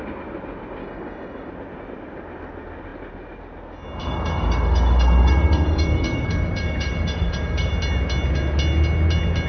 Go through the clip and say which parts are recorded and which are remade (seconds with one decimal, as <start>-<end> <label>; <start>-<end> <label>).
0.0-0.8 recorded; 0.8-1.5 remade; 1.5-4.0 recorded; 4.0-7.7 remade; 7.7-9.5 recorded